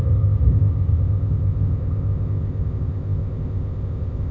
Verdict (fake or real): fake